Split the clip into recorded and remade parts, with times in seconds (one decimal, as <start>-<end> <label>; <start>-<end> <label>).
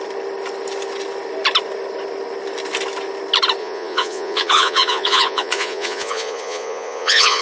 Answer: 0.0-3.6 recorded; 3.6-7.4 remade